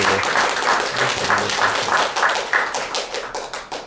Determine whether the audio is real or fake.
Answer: real